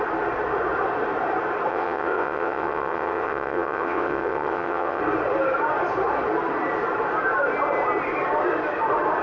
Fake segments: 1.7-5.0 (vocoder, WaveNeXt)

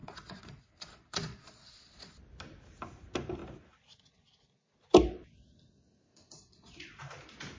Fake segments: 0.0-2.1 (vocoder, Vocos); 6.1-7.0

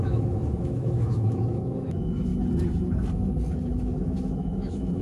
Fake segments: 0.0-2.3 (autoencoder, DAC-VAE); 3.5-5.0

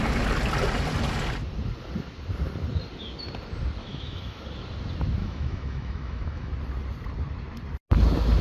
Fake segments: 3.8-4.4 (autoencoder, DAC-VAE); 5.2-6.5

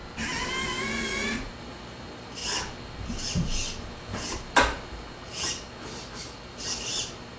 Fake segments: 0.9-1.5 (vocoder, Vocos)

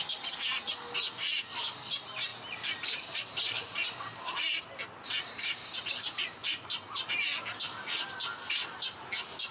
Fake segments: 2.3-4.6 (vocoder, BigVGAN v2); 6.4-7.1

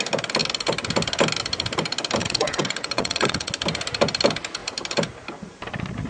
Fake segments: 2.2-3.5 (vocoder, WaveNeXt)

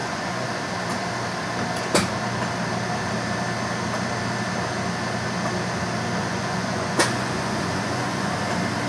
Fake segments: 0.0-0.5 (vocoder, Vocos); 6.2-8.3